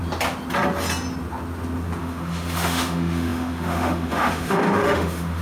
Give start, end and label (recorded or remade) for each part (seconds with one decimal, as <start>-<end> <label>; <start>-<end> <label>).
0.0-2.0 recorded; 2.0-5.4 remade